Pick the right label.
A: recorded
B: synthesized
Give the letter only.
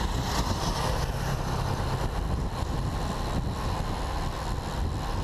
A